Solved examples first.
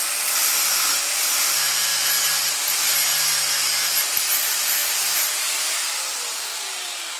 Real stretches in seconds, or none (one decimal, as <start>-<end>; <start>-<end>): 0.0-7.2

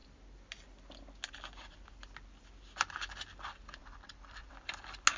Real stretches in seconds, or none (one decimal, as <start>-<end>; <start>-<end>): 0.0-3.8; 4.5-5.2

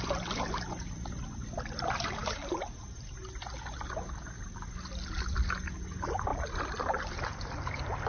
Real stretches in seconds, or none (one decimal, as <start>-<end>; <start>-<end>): 0.0-2.2; 3.1-8.1